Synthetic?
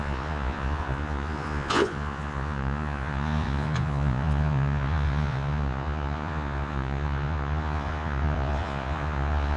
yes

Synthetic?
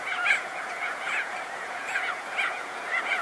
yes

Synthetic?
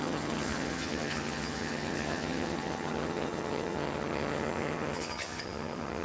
yes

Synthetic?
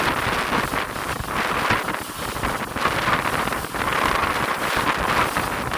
no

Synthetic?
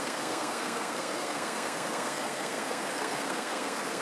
yes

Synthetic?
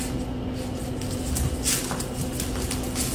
no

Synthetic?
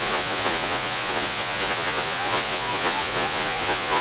yes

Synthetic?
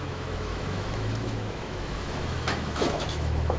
yes